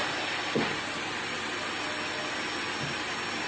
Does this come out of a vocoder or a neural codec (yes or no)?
no